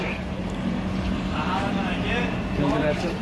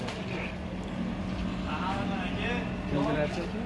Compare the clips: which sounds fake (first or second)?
first